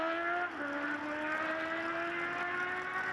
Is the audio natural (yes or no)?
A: yes